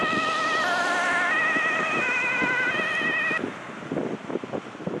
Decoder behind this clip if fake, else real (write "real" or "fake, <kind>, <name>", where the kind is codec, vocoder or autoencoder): real